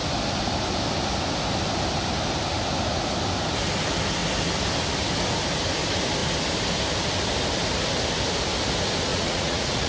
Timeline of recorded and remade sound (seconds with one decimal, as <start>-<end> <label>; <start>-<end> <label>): 0.0-9.1 recorded; 9.1-9.9 remade